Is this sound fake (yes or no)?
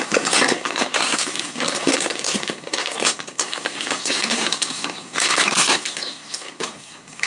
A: yes